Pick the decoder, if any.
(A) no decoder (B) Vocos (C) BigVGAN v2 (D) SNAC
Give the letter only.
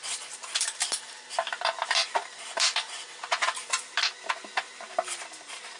C